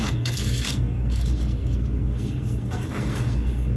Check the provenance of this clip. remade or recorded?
remade